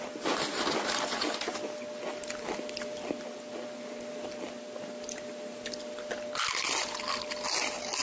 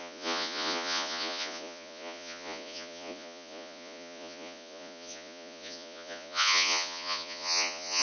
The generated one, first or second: second